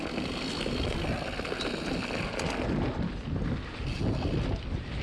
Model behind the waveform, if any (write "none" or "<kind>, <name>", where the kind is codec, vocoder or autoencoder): none